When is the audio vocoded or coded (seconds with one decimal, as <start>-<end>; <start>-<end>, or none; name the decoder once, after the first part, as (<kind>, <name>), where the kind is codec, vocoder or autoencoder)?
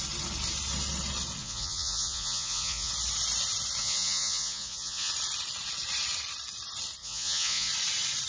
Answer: 1.4-2.9 (vocoder, Vocos); 3.8-5.1; 7.0-7.7